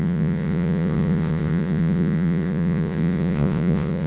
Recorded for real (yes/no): no